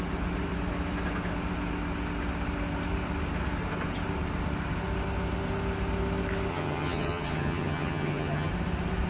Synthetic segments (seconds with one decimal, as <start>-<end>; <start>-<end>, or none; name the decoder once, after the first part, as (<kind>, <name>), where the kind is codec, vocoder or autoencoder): 6.5-8.5 (vocoder, HiFi-GAN)

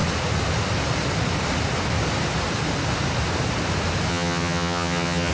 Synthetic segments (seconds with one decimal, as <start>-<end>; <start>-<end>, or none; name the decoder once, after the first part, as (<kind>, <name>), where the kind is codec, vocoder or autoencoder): 4.1-5.3 (vocoder, HiFi-GAN)

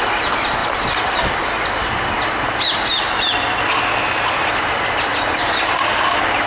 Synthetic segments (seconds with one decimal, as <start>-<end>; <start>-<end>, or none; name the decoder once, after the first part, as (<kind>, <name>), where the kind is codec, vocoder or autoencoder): none

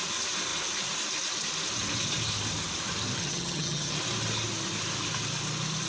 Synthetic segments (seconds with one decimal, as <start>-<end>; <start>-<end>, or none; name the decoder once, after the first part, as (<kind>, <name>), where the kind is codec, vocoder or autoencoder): 3.2-3.9 (vocoder, HiFi-GAN)